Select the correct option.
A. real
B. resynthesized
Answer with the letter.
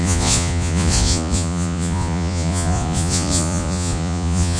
B